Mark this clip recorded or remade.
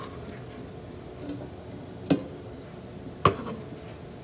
recorded